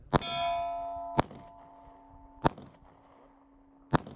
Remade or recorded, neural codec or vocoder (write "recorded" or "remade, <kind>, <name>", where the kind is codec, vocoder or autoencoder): recorded